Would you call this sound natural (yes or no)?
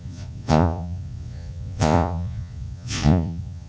no